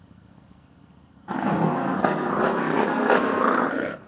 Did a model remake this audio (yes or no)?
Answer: yes